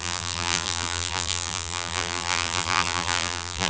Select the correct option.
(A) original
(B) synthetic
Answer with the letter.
B